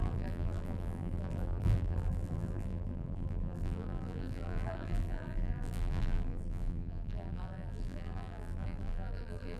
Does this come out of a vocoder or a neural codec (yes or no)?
yes